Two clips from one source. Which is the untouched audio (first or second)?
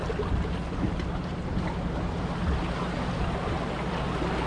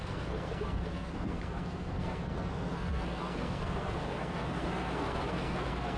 first